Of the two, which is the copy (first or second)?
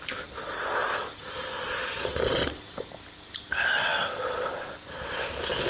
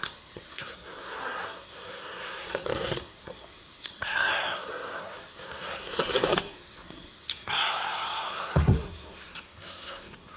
second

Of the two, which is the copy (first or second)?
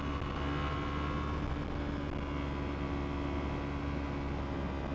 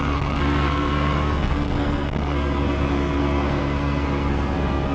second